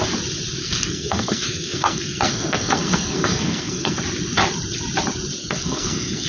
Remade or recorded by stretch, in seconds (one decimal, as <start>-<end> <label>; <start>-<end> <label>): 0.0-0.6 recorded; 0.6-4.0 remade; 4.0-5.4 recorded; 5.4-6.3 remade